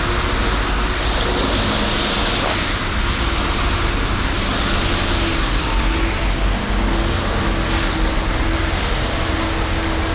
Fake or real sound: real